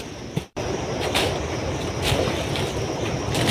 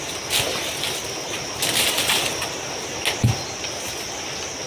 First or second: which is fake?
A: first